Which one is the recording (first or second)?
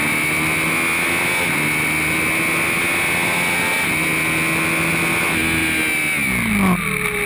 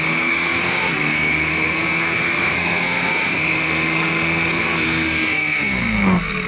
first